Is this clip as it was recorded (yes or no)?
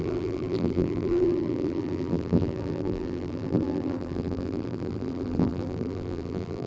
no